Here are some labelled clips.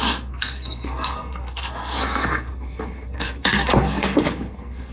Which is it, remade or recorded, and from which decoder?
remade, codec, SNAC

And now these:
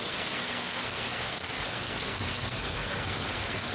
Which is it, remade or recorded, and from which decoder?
remade, codec, SNAC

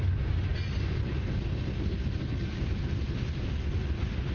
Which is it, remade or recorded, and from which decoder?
recorded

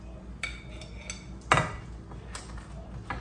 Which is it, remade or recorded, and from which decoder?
recorded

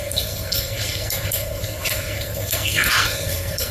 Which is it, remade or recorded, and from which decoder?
remade, codec, SNAC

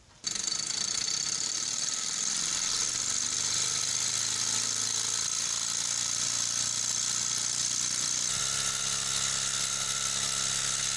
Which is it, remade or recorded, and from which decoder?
recorded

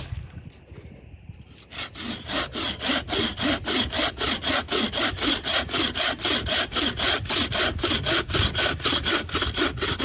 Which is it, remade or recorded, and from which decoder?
recorded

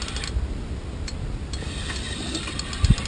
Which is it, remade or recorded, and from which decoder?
recorded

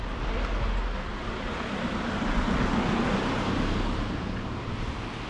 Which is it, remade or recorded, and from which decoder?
recorded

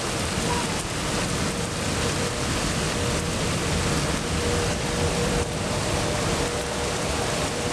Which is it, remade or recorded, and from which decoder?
recorded